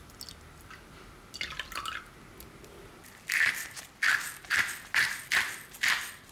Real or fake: real